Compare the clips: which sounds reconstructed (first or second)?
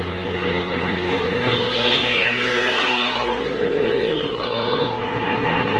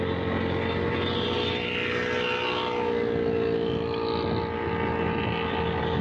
first